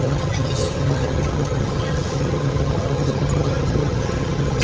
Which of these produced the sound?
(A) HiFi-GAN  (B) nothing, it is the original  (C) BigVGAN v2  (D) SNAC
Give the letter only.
A